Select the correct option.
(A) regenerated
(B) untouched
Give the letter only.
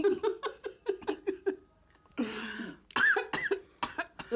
B